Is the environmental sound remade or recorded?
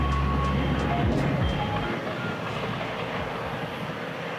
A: recorded